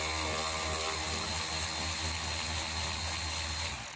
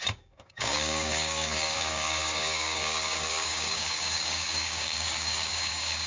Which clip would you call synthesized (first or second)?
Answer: second